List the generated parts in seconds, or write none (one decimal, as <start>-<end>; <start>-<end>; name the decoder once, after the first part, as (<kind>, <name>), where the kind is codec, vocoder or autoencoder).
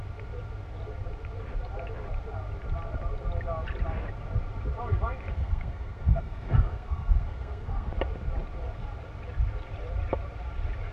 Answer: 5.3-7.9 (codec, SNAC)